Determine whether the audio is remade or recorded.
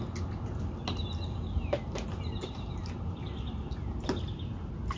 recorded